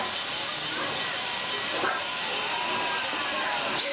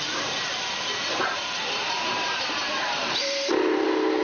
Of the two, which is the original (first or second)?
first